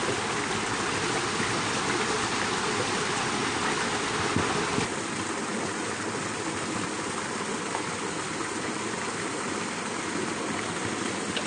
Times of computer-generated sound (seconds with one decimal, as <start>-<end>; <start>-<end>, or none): none